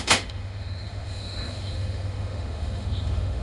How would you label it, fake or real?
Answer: fake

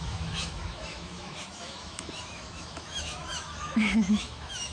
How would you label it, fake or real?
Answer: fake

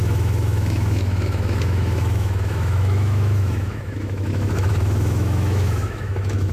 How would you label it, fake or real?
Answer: fake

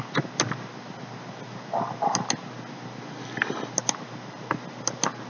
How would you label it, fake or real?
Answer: real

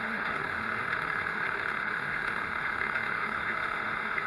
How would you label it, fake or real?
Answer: fake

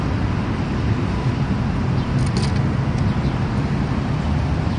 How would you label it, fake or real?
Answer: real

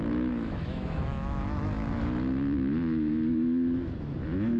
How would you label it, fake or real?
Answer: fake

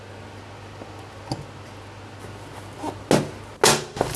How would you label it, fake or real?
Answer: real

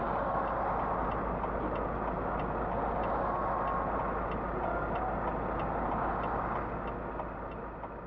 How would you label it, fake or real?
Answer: real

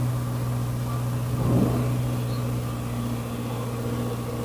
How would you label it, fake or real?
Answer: real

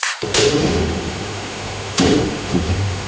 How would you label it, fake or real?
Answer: fake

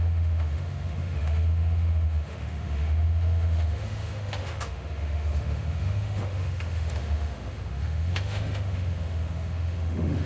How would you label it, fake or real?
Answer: fake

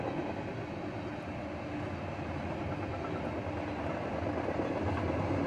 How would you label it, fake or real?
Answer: real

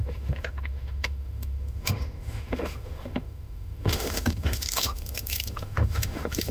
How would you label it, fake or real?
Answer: fake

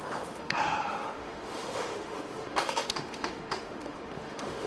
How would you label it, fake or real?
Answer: fake